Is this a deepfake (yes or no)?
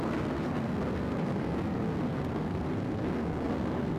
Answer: yes